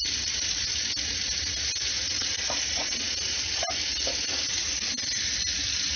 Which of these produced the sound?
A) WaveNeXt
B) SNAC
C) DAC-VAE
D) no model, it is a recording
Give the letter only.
D